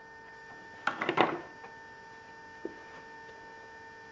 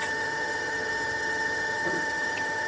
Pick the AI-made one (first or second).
second